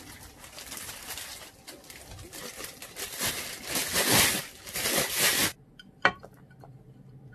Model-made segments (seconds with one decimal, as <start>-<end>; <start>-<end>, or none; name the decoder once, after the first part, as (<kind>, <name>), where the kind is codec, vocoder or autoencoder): 0.0-3.9 (vocoder, BigVGAN v2); 4.4-5.4; 6.1-7.3

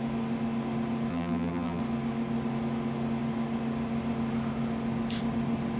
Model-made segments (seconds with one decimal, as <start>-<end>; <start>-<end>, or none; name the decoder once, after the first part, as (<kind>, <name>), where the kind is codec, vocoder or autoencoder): 1.1-1.8 (vocoder, BigVGAN v2)

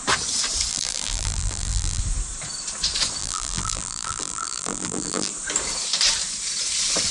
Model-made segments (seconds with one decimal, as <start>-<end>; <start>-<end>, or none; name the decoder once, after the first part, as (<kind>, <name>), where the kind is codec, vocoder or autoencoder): 0.7-2.0 (vocoder, BigVGAN v2); 3.2-5.3